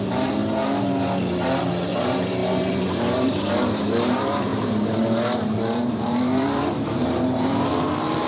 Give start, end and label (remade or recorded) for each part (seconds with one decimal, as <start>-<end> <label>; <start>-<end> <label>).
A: 0.0-0.4 remade; 0.4-1.9 recorded; 1.9-8.3 remade